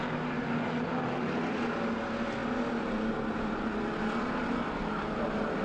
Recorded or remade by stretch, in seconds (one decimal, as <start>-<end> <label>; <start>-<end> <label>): 0.0-5.6 recorded